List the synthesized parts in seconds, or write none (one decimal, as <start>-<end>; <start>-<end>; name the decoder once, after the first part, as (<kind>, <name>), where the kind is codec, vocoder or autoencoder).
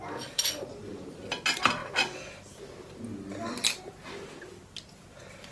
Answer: none